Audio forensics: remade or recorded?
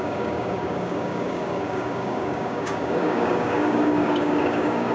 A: remade